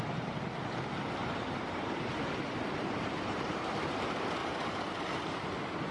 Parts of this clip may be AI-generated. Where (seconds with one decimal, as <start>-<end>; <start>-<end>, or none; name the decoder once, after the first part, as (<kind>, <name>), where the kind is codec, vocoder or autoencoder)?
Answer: 1.2-4.0 (vocoder, BigVGAN v2); 4.4-5.2